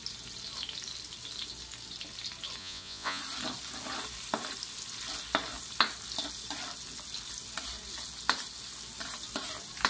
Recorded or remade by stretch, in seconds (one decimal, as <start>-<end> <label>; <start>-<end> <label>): 0.0-2.6 recorded; 2.6-3.2 remade; 3.2-9.9 recorded